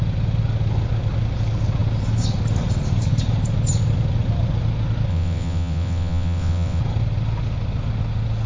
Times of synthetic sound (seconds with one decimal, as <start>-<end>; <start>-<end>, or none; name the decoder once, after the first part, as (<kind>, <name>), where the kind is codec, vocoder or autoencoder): 5.1-6.8 (vocoder, WaveNeXt)